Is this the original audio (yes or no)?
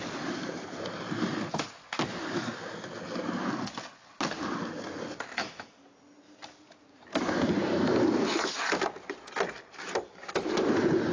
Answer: yes